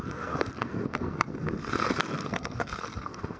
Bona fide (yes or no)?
no